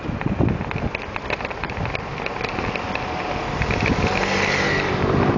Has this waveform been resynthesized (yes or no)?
no